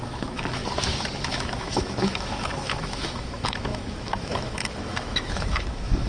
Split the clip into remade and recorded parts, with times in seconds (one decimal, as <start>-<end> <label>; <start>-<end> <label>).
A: 0.0-0.6 remade; 0.6-1.2 recorded; 1.2-6.1 remade